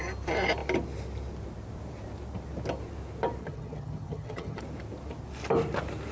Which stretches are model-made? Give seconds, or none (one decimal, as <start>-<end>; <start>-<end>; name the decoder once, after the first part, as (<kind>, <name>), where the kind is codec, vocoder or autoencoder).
3.4-4.6 (vocoder, HiFi-GAN)